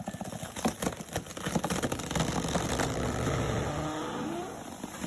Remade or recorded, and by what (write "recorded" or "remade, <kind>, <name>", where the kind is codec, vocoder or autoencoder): recorded